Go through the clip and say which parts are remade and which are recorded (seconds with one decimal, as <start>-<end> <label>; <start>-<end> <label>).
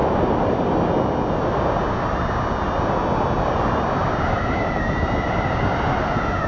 0.0-6.5 recorded